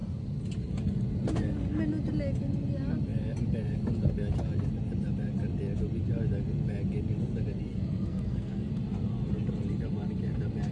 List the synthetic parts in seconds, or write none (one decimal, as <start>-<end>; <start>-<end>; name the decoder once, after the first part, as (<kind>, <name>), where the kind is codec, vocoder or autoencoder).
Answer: 7.7-8.7 (codec, SNAC)